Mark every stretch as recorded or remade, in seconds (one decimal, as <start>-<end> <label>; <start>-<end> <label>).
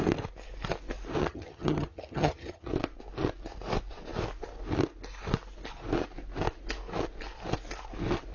0.0-1.2 recorded; 1.2-2.7 remade; 2.7-8.3 recorded